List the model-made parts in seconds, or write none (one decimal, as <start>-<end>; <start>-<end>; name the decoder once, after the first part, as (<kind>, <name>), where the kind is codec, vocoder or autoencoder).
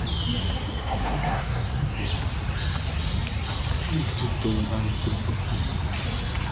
0.7-2.1 (codec, SNAC)